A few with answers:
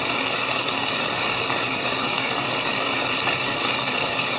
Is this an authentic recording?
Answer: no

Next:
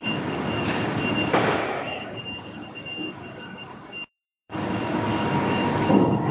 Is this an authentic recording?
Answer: no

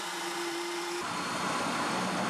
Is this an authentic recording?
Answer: no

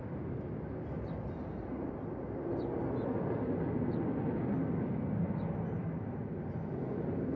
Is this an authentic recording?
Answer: yes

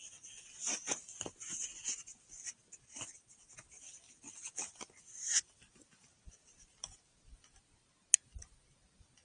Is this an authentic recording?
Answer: yes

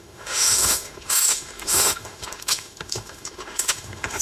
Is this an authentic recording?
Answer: no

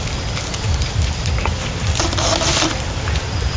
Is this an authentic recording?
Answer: yes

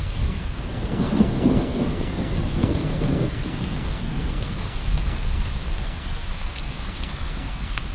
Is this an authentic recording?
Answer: no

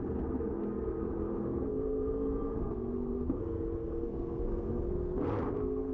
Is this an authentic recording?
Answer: no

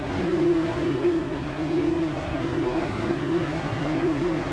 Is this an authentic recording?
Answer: no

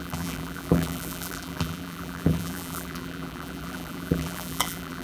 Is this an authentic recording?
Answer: no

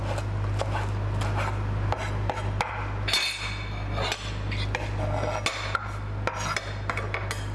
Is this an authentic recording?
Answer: yes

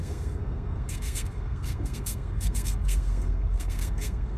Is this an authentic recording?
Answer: no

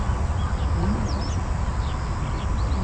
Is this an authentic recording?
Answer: yes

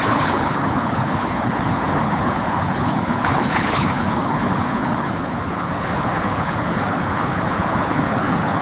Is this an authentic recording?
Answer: no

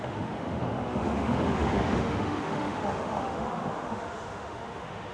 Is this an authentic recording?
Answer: no